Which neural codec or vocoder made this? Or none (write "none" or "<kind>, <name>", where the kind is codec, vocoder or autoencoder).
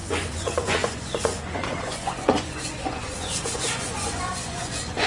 vocoder, Vocos